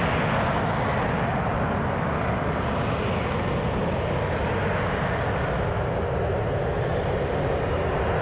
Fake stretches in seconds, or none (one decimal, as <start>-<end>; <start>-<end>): 1.5-2.5; 6.7-7.5